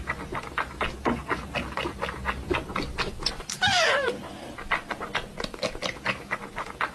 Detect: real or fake real